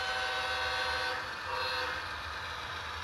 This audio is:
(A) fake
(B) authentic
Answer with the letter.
B